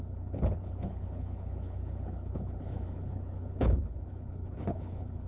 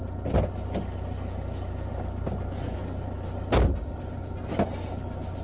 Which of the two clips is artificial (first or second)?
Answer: first